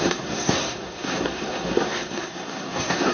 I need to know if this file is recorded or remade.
remade